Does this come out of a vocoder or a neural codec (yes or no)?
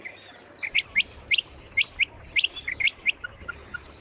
no